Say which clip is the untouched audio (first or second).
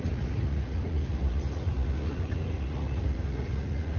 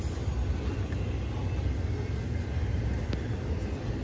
second